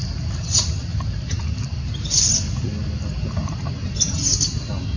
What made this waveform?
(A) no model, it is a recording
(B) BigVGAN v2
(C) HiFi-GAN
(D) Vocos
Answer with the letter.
A